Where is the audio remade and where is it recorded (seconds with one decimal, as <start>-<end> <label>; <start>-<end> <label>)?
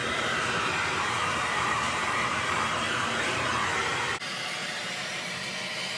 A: 0.0-3.6 remade; 3.6-4.6 recorded; 4.6-5.5 remade; 5.5-6.0 recorded